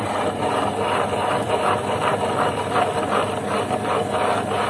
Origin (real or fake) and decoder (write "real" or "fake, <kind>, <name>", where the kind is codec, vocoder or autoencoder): real